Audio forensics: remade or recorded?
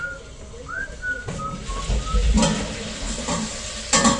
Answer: recorded